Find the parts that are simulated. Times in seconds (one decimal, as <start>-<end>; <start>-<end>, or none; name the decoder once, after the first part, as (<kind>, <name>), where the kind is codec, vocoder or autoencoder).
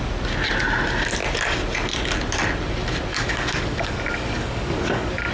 3.1-5.3 (codec, DAC)